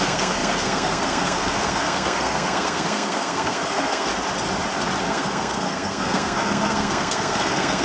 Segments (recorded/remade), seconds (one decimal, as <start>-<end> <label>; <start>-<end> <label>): 0.0-4.1 remade; 4.1-5.0 recorded; 5.0-7.8 remade